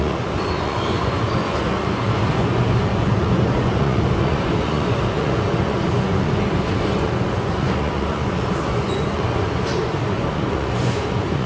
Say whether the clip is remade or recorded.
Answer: remade